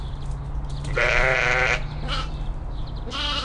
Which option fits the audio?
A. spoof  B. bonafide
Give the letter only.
B